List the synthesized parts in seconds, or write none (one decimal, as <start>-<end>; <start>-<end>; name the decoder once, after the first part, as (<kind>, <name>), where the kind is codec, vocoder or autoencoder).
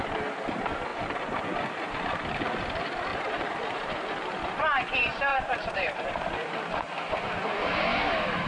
0.9-1.4 (vocoder, BigVGAN v2); 3.1-4.6; 5.3-6.0